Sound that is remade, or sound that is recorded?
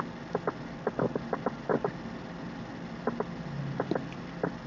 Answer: recorded